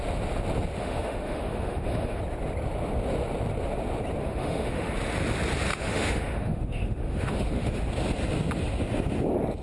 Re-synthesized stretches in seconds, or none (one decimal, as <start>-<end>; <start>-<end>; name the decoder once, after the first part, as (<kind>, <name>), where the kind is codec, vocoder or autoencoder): 0.8-2.2 (autoencoder, DAC-VAE); 4.2-4.9; 5.7-7.8